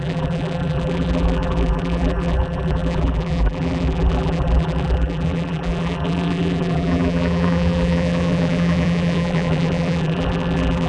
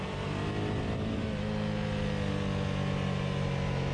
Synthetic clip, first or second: first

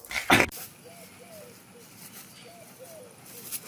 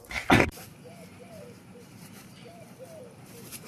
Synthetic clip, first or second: second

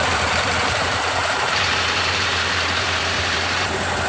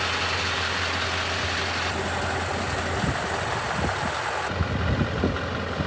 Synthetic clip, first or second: first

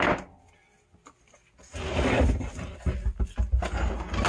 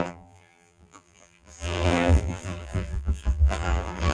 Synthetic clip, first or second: second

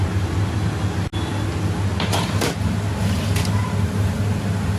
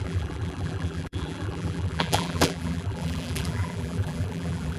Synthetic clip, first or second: second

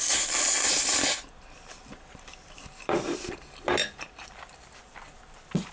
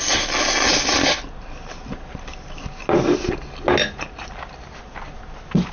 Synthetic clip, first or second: first